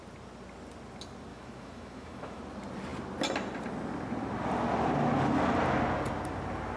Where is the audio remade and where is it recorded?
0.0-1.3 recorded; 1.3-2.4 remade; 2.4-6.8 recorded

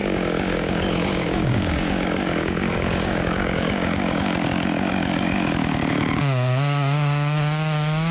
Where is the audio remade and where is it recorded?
0.0-8.1 remade

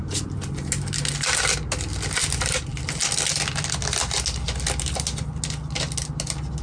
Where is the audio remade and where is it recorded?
0.0-6.6 recorded

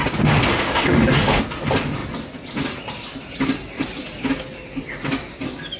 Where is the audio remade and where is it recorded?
0.0-0.5 recorded; 0.5-1.4 remade; 1.4-5.8 recorded

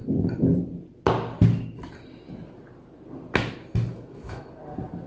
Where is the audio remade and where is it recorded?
0.0-3.9 recorded; 3.9-4.5 remade; 4.5-5.1 recorded

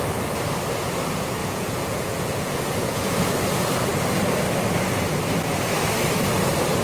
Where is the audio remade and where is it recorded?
0.0-1.4 recorded; 1.4-3.2 remade; 3.2-6.8 recorded

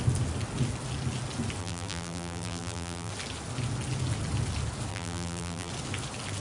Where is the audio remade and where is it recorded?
0.0-1.6 recorded; 1.6-3.1 remade; 3.1-4.9 recorded; 4.9-5.7 remade; 5.7-6.4 recorded

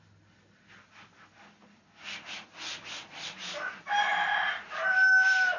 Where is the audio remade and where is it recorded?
0.0-5.6 recorded